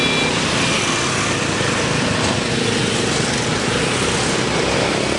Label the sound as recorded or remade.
recorded